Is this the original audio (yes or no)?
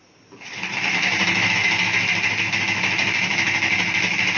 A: yes